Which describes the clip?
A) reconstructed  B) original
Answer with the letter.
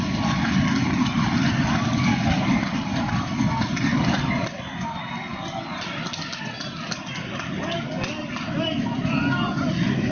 B